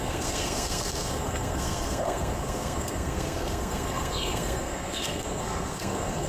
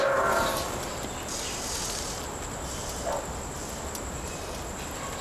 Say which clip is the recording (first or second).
second